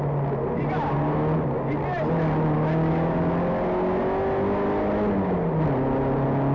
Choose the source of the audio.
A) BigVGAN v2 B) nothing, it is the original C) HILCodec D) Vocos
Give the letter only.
B